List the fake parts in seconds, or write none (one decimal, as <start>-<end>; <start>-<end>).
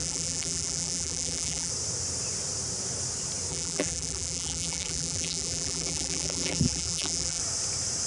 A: 0.0-1.7; 3.5-7.4